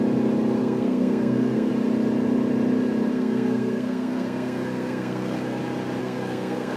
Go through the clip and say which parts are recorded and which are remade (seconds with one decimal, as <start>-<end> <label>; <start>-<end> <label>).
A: 0.0-0.6 recorded; 0.6-1.7 remade; 1.7-3.1 recorded; 3.1-5.6 remade; 5.6-6.0 recorded; 6.0-6.8 remade